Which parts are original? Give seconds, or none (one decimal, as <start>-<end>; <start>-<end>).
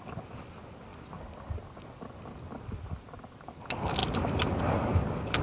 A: 0.0-5.4